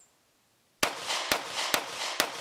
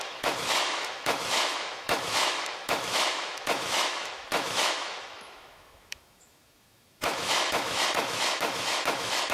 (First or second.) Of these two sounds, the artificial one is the second